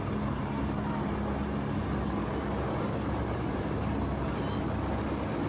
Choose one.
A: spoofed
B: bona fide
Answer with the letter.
B